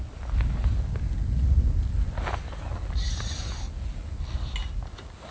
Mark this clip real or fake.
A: real